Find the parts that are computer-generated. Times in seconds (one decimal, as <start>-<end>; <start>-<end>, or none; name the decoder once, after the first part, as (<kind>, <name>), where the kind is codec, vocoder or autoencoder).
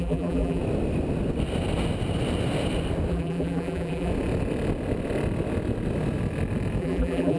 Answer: 0.0-0.6 (vocoder, BigVGAN v2); 3.1-4.1; 6.8-7.4